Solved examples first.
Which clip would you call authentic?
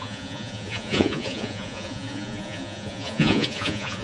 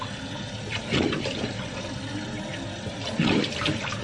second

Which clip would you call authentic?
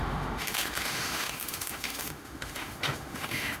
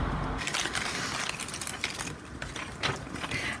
second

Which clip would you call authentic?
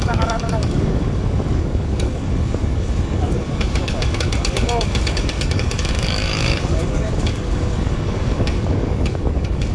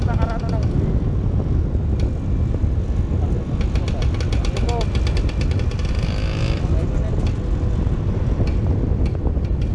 second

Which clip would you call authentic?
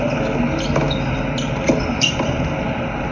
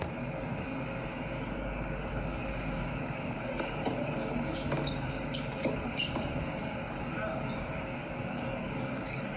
first